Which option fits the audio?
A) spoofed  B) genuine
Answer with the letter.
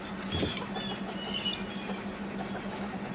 B